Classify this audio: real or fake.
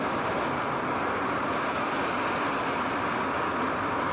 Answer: real